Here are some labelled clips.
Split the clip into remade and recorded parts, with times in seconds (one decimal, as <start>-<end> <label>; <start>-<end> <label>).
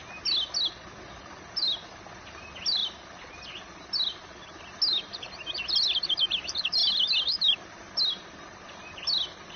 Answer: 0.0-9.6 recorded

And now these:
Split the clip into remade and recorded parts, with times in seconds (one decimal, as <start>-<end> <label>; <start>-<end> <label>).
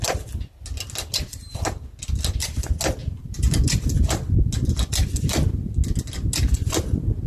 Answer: 0.0-3.0 recorded; 3.0-4.4 remade; 4.4-7.3 recorded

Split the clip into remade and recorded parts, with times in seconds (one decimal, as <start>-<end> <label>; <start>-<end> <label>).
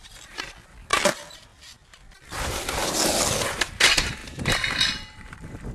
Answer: 0.0-5.7 remade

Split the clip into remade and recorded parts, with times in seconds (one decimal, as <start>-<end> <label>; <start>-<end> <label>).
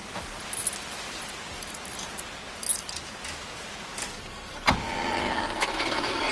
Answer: 0.0-4.1 recorded; 4.1-4.7 remade; 4.7-5.2 recorded; 5.2-6.3 remade